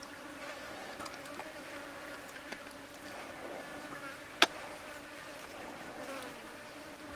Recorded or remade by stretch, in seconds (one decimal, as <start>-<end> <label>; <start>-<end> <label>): 0.0-6.4 recorded; 6.4-7.2 remade